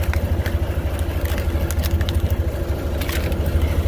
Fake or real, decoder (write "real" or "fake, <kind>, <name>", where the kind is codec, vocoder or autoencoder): real